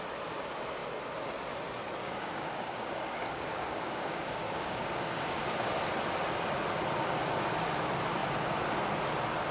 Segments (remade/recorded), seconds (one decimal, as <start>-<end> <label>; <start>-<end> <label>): 0.0-2.0 recorded; 2.0-5.4 remade; 5.4-9.5 recorded